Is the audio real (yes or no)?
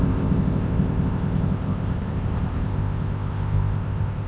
no